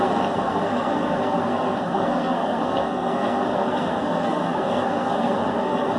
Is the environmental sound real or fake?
fake